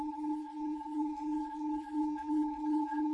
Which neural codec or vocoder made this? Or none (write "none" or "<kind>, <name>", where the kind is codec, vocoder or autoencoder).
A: codec, HILCodec